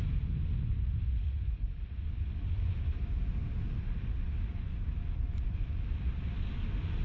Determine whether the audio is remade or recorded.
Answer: recorded